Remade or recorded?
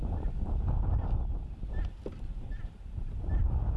recorded